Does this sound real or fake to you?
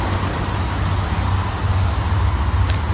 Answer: real